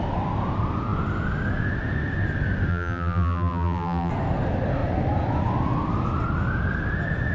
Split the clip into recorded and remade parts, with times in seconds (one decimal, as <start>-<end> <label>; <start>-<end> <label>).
0.0-2.7 recorded; 2.7-4.1 remade; 4.1-7.3 recorded